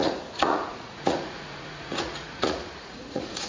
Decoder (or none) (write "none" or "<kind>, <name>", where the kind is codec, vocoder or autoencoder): vocoder, Vocos